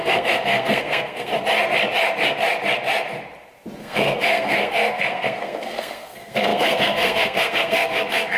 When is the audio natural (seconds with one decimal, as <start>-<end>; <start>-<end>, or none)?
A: 1.3-3.8